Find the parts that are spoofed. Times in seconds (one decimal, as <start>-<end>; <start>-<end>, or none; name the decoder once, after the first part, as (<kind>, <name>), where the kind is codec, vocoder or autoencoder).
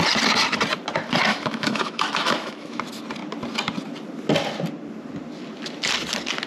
1.3-2.8 (autoencoder, DAC-VAE)